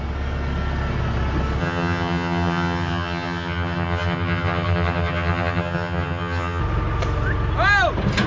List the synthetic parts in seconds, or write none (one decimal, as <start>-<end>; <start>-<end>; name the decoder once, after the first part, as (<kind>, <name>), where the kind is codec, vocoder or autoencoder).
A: 1.6-6.6 (vocoder, HiFi-GAN)